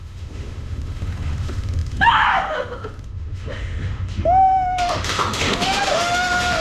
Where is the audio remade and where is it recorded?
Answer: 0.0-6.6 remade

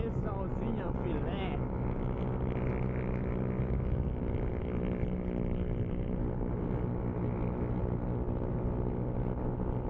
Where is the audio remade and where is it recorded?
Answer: 0.0-9.9 recorded

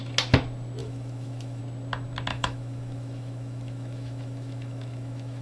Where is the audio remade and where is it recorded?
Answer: 0.0-0.8 recorded; 0.8-1.6 remade; 1.6-2.3 recorded; 2.3-5.4 remade

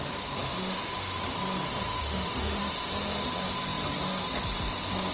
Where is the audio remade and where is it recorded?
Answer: 0.0-0.4 recorded; 0.4-1.2 remade; 1.2-2.0 recorded; 2.0-2.6 remade; 2.6-5.1 recorded

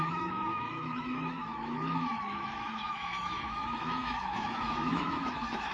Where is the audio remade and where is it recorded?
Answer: 0.0-5.7 remade

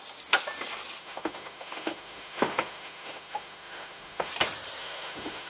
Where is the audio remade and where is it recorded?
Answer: 0.0-1.0 recorded; 1.0-4.3 remade; 4.3-4.8 recorded; 4.8-5.5 remade